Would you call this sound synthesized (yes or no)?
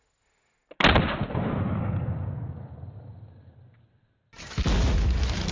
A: no